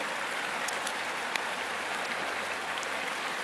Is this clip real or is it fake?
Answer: real